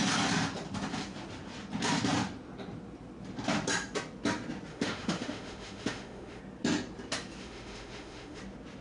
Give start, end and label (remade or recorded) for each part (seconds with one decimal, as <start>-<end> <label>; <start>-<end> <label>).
0.0-4.7 recorded; 4.7-6.4 remade; 6.4-7.4 recorded; 7.4-8.4 remade; 8.4-8.8 recorded